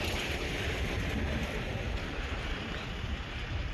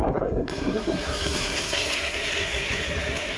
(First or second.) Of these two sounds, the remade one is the second